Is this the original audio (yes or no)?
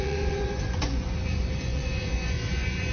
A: no